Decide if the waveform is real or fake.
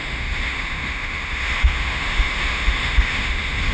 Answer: fake